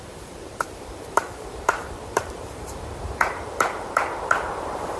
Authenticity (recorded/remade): remade